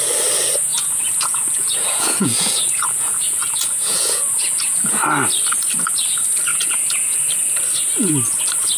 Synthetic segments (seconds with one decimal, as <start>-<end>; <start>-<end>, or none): 0.7-5.0; 6.5-7.2